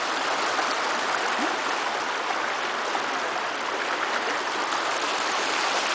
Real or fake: real